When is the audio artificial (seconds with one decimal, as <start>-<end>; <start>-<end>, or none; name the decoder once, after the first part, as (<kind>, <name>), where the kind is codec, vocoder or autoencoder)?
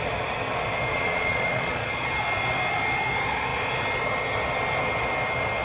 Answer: 0.9-2.1 (vocoder, Vocos)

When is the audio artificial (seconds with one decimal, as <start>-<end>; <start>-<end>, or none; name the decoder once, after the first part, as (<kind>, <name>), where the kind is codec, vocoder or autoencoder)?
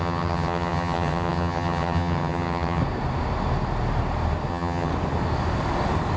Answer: 0.0-2.8 (vocoder, HiFi-GAN); 4.5-4.9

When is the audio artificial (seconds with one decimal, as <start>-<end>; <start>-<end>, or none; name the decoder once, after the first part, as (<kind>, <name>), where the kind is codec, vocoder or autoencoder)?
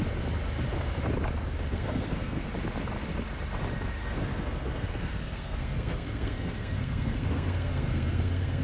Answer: 1.7-2.5 (codec, SNAC); 4.0-8.6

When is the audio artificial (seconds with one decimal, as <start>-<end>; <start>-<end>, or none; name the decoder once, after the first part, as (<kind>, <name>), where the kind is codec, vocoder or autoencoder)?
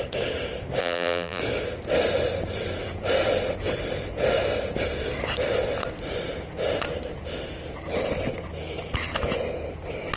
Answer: 0.8-1.4 (vocoder, BigVGAN v2)